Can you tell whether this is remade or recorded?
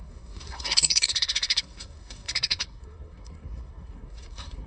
remade